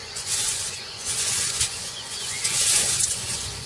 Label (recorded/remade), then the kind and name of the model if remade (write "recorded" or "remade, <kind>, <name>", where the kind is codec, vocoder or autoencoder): remade, vocoder, Vocos